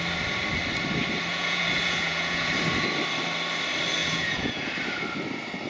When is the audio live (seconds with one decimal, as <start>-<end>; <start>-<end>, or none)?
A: 0.0-1.3; 2.5-4.0; 4.6-5.7